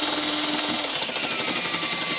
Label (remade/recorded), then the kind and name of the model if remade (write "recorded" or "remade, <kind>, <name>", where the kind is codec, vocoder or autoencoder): recorded